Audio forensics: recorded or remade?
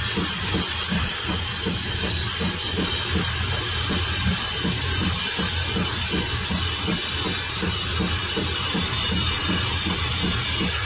recorded